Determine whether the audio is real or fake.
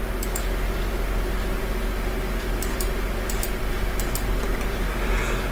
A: real